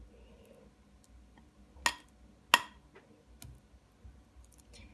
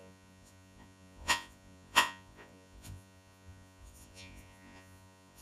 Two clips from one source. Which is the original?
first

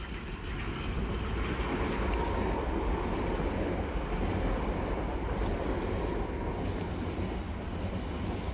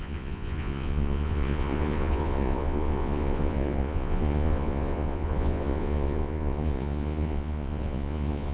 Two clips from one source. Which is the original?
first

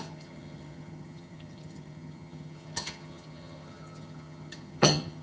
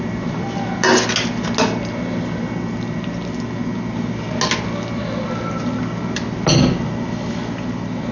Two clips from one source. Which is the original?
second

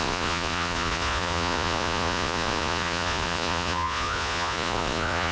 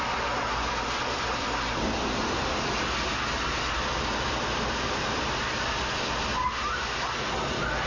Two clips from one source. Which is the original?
second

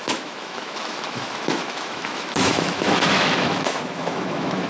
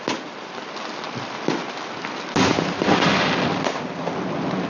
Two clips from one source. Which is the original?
second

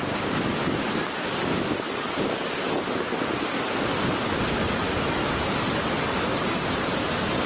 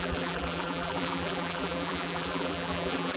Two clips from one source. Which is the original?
first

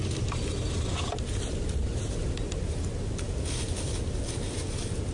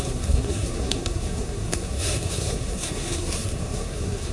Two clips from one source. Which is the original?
first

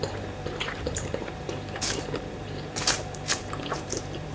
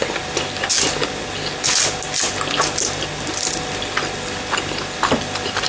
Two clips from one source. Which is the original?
second